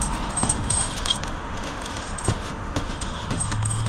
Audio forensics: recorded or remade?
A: remade